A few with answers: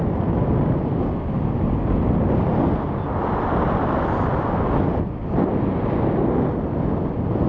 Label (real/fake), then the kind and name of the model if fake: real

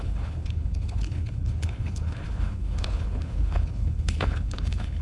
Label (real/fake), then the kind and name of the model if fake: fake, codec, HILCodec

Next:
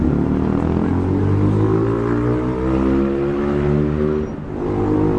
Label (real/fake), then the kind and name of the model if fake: real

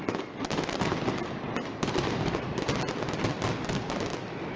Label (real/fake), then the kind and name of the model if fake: real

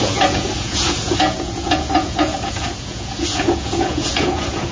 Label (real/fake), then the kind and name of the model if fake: fake, vocoder, Vocos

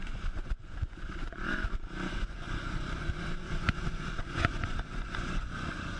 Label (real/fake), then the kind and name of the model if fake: fake, vocoder, Vocos